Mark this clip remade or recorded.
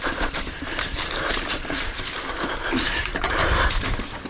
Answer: remade